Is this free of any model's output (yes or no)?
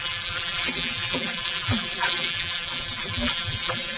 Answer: no